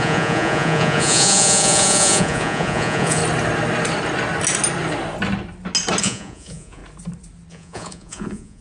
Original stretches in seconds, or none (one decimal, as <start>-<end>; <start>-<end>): 3.2-6.0; 6.8-7.5